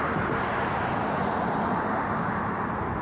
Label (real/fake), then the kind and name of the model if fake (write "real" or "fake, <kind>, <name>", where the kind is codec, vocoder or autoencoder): real